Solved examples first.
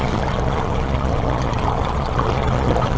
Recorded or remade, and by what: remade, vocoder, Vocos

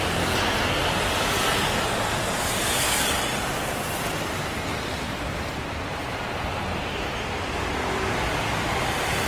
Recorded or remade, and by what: recorded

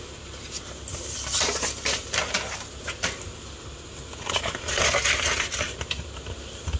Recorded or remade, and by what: recorded